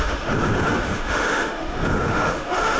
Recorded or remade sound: remade